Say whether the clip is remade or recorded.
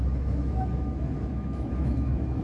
remade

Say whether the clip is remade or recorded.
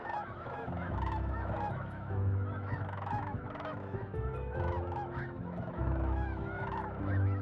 remade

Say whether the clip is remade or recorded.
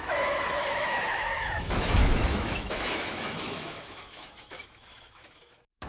remade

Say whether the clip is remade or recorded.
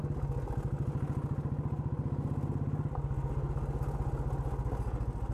recorded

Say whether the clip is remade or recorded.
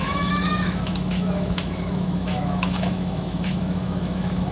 remade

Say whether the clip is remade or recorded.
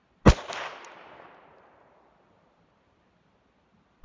recorded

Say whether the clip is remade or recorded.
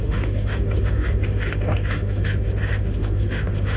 remade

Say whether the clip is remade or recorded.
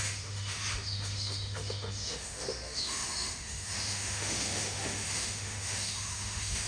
remade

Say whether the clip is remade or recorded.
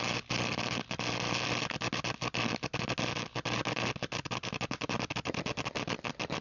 recorded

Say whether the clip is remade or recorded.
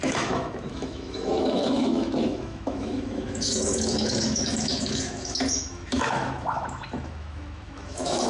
remade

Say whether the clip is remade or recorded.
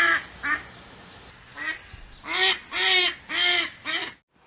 recorded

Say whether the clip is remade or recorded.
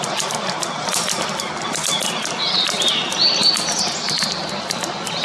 recorded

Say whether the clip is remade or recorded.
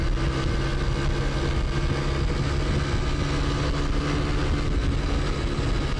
recorded